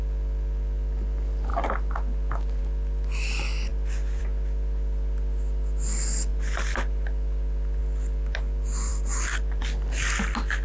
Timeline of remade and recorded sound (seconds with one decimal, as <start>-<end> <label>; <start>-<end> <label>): 0.0-10.6 recorded